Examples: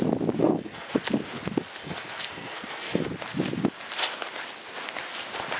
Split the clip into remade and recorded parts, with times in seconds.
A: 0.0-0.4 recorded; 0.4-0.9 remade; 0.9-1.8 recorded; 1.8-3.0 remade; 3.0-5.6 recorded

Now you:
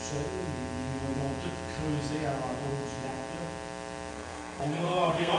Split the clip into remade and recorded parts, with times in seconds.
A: 0.0-4.1 recorded; 4.1-5.4 remade

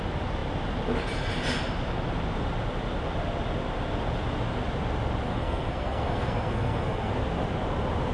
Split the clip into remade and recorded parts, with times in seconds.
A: 0.0-5.3 recorded; 5.3-7.1 remade; 7.1-8.1 recorded

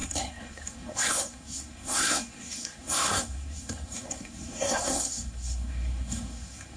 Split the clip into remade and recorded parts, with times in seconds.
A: 0.0-6.8 remade

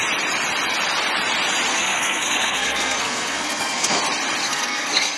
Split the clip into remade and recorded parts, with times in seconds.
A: 0.0-1.7 recorded; 1.7-4.0 remade; 4.0-4.4 recorded; 4.4-5.2 remade

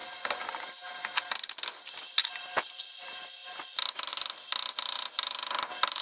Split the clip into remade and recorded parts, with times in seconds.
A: 0.0-6.0 recorded